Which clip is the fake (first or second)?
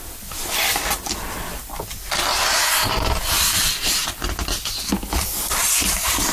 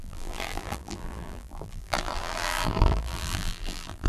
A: second